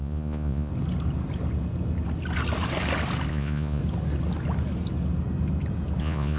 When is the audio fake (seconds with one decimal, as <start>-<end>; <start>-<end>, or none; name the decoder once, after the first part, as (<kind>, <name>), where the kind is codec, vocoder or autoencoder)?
0.0-0.7 (vocoder, Vocos); 3.3-3.8; 6.0-6.4